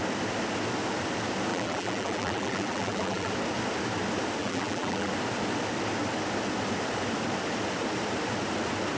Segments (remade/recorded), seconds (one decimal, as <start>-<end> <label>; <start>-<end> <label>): 0.0-1.5 recorded; 1.5-3.3 remade; 3.3-4.4 recorded; 4.4-5.1 remade; 5.1-9.0 recorded